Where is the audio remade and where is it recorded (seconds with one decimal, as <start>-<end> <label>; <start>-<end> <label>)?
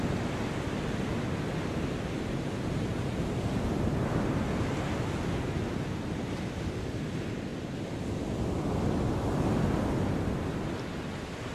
0.0-11.5 recorded